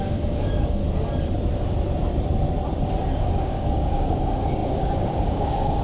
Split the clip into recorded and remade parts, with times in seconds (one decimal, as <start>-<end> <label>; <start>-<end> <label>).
0.0-0.8 remade; 0.8-3.1 recorded; 3.1-5.8 remade